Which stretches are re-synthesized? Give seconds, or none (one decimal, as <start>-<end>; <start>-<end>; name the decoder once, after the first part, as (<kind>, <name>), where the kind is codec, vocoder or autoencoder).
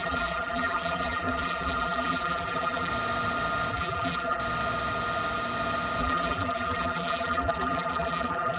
0.0-2.9 (vocoder, BigVGAN v2); 3.7-4.4; 6.0-8.6